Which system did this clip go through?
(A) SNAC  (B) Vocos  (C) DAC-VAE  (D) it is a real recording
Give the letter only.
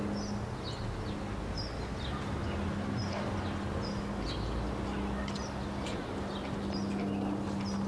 D